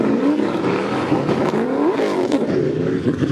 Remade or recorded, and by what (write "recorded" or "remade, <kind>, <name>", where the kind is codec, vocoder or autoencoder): remade, codec, DAC